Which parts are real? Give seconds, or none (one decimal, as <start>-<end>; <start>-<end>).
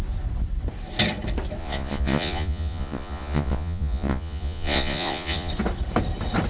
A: 0.0-1.6; 5.5-6.5